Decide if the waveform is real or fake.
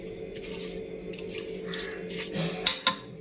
real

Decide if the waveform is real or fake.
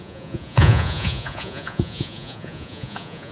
fake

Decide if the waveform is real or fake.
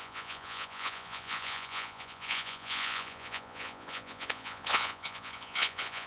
fake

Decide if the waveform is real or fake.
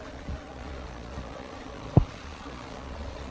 fake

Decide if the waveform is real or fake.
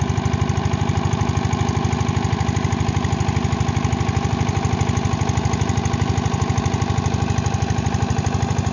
real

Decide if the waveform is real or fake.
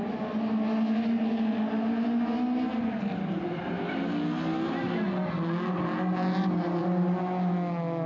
real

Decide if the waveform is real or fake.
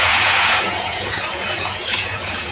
fake